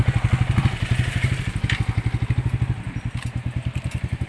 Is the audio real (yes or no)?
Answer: yes